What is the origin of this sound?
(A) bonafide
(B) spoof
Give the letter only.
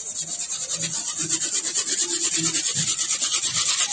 A